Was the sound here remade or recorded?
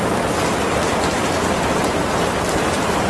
recorded